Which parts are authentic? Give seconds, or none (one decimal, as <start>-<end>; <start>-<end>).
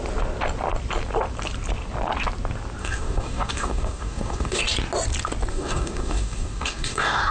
0.0-2.8; 4.6-5.5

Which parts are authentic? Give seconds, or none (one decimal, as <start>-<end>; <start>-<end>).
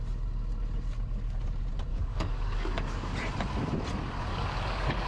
0.0-1.9; 3.1-4.3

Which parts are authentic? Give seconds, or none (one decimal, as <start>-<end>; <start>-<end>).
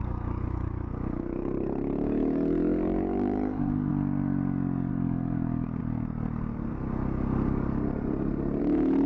3.9-4.9; 5.8-8.6